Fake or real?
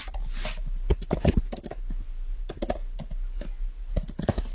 real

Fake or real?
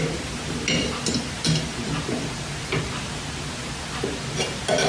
real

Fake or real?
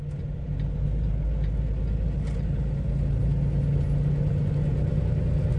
real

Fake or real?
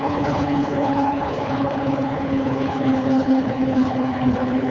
fake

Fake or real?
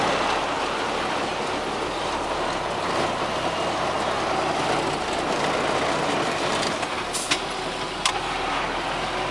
real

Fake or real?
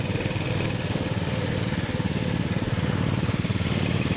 real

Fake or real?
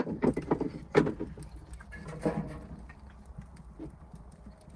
real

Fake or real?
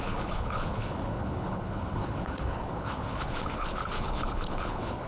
fake